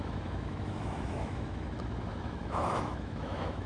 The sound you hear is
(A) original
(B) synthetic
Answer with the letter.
B